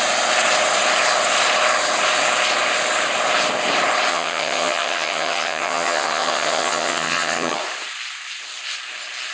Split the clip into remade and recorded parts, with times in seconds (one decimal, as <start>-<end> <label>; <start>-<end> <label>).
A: 0.0-4.1 recorded; 4.1-7.6 remade; 7.6-9.3 recorded